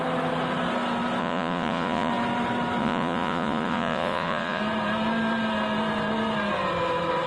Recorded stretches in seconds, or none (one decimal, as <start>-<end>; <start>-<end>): 0.0-1.2; 2.1-2.8; 4.6-7.3